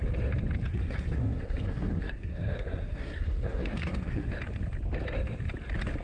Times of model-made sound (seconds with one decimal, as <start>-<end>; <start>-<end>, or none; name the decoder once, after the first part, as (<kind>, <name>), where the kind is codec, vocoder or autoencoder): 0.7-4.3 (codec, SNAC)

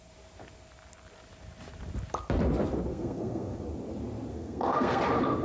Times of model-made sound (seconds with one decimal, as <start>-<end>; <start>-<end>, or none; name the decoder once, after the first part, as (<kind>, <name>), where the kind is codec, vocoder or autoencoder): 2.9-3.6 (codec, SNAC); 4.3-5.0